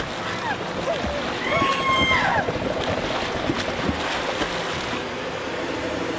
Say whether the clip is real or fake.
real